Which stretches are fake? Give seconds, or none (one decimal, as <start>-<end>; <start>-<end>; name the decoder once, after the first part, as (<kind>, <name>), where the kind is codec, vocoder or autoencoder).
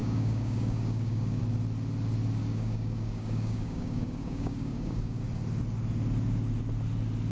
0.0-1.4 (codec, DAC); 2.4-5.2